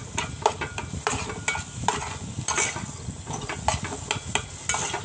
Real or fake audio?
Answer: real